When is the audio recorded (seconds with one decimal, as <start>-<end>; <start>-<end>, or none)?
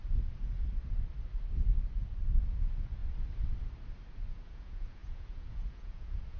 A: 0.0-2.4; 3.0-4.1